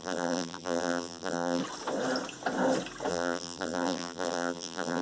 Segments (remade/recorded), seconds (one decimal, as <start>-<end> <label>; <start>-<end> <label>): 0.0-1.6 remade; 1.6-3.1 recorded; 3.1-5.0 remade